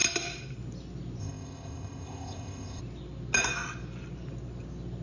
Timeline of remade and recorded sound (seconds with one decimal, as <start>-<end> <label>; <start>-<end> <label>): 0.0-1.2 recorded; 1.2-2.8 remade; 2.8-5.0 recorded